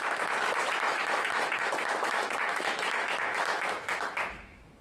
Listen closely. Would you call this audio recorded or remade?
remade